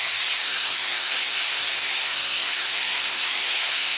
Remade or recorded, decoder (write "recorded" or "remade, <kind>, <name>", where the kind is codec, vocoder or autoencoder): remade, codec, SNAC